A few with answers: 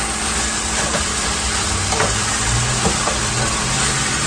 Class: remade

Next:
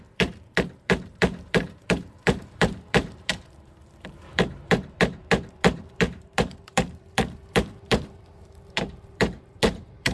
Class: remade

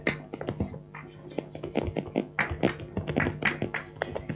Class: recorded